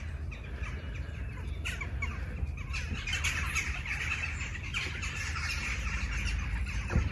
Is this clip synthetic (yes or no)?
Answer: no